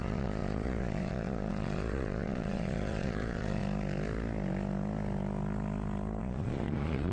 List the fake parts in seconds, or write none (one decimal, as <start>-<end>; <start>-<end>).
0.0-3.6; 6.2-7.1